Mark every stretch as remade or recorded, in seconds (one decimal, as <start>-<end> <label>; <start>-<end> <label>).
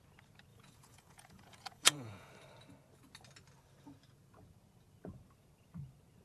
0.0-0.5 recorded; 0.5-2.3 remade; 2.3-6.2 recorded